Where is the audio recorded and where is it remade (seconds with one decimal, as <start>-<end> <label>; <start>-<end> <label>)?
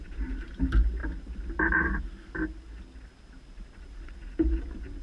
0.0-5.0 recorded